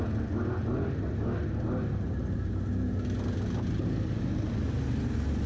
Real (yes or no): yes